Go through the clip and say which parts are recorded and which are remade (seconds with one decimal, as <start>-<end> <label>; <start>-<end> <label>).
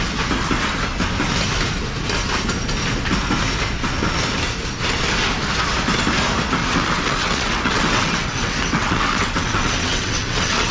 0.0-6.6 recorded; 6.6-10.7 remade